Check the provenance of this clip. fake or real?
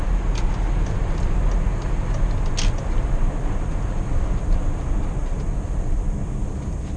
real